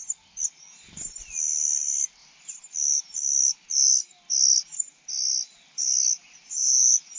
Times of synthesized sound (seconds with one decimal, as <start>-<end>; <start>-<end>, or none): none